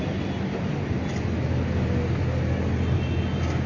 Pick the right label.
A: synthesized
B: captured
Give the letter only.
B